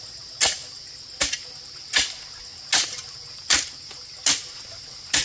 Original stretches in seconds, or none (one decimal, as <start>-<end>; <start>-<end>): 0.0-5.2